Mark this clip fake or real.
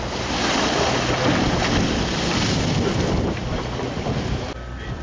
fake